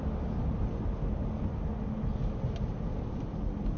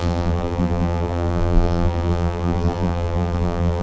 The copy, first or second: second